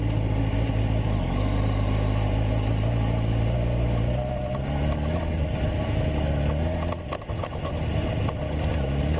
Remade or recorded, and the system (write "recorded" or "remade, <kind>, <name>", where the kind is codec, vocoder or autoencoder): recorded